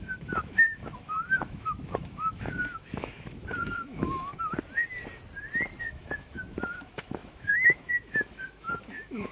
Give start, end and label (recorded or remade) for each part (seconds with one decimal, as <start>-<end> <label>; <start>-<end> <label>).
0.0-4.3 remade; 4.3-5.8 recorded; 5.8-9.3 remade